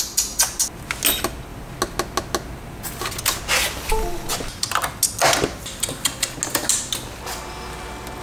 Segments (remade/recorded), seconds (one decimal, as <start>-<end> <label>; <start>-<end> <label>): 0.0-8.2 recorded